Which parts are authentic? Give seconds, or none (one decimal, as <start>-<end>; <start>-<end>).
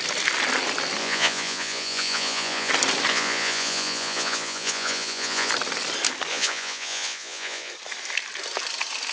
0.0-1.0; 2.7-3.1; 5.5-6.3; 7.7-9.1